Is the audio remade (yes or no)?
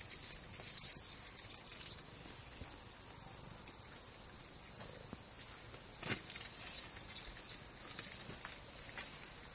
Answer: no